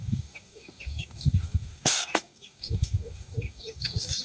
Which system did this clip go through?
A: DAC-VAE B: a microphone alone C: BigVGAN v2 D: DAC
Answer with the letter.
D